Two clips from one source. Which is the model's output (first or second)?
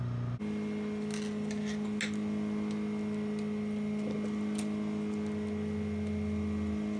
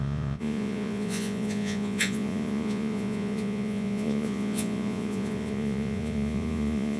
second